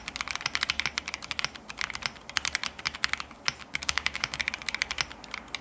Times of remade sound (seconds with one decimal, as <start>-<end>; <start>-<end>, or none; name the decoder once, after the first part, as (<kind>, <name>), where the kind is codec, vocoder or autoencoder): 3.6-4.4 (codec, DAC)